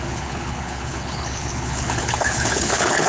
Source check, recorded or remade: remade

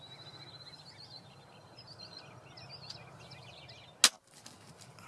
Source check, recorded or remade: recorded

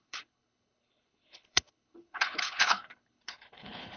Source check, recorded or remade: remade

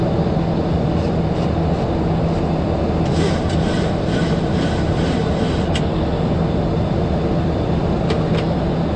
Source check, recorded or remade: recorded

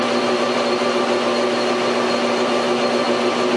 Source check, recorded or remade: recorded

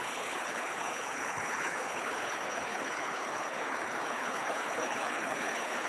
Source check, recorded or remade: remade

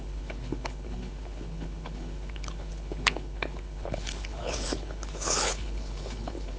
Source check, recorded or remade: remade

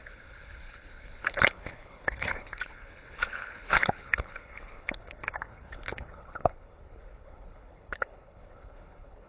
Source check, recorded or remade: remade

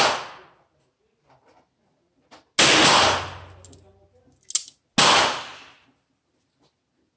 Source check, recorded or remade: recorded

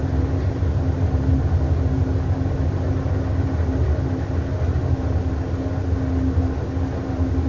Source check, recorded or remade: recorded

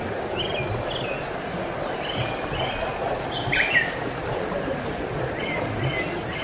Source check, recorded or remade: recorded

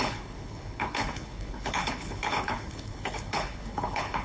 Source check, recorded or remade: remade